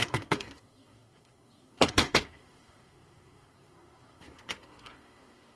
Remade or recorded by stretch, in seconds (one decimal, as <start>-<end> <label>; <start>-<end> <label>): 0.0-5.6 remade